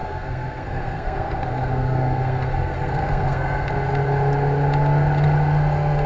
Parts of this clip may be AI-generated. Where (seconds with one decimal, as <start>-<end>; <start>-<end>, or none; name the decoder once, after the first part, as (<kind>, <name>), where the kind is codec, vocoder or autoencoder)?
0.0-3.7 (codec, SNAC)